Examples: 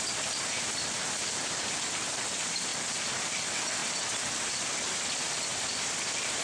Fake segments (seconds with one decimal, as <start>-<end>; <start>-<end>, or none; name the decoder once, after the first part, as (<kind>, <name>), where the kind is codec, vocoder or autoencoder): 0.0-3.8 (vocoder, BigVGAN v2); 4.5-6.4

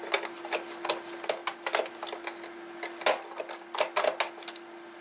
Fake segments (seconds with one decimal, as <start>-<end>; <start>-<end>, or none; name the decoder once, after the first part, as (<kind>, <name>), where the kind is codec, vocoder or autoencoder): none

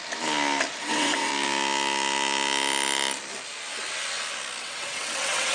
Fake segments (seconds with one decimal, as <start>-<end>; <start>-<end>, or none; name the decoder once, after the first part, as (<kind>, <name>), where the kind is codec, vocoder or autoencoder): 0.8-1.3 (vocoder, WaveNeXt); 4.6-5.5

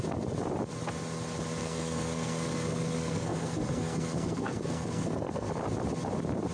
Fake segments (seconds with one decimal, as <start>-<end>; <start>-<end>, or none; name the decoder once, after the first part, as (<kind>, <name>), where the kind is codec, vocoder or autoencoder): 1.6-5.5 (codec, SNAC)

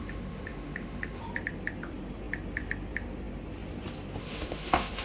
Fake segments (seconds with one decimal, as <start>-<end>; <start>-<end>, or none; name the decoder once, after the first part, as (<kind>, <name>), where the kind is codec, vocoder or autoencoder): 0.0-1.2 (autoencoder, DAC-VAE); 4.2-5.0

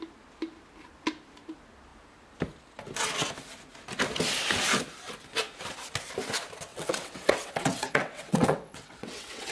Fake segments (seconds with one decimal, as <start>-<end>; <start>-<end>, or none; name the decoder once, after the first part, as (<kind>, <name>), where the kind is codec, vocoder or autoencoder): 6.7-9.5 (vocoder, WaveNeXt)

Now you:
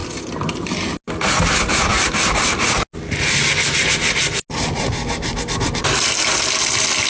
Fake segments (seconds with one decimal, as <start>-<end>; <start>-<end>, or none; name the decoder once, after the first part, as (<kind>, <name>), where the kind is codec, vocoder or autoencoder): none

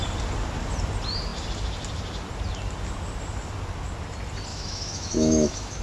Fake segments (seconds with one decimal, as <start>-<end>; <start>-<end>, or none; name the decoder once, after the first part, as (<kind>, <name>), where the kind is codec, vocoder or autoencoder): 4.5-5.8 (autoencoder, DAC-VAE)